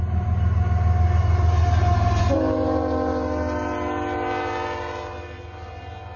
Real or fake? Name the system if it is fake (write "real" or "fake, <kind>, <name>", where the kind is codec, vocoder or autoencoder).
real